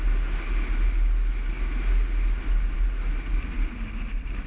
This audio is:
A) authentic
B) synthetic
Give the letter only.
A